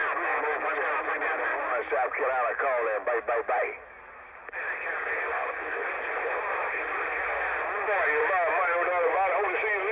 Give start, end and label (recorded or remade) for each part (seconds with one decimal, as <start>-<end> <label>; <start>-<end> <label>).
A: 0.0-9.9 recorded